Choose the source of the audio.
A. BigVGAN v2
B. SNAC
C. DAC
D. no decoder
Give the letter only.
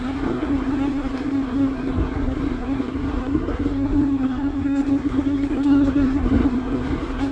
B